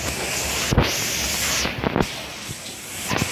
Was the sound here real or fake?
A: real